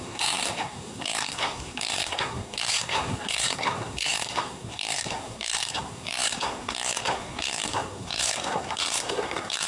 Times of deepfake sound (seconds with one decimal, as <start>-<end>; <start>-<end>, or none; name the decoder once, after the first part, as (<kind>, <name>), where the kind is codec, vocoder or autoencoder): 0.0-9.7 (codec, SNAC)